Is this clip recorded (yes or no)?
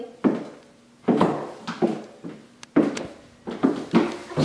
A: yes